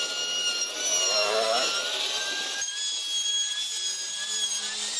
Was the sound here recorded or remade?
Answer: recorded